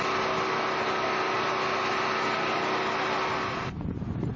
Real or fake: real